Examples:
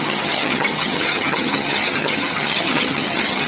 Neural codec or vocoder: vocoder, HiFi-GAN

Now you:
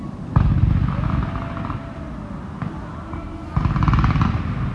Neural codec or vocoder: none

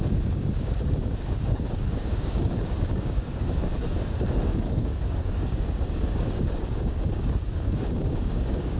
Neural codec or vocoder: codec, DAC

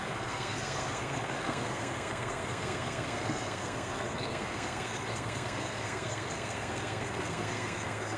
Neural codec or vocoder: codec, SNAC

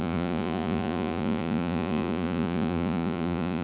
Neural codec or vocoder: vocoder, Vocos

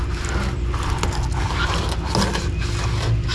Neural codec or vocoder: none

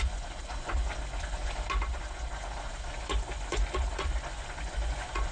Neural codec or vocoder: vocoder, Vocos